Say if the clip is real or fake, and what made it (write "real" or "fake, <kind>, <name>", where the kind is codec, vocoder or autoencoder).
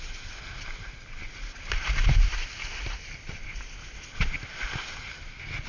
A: real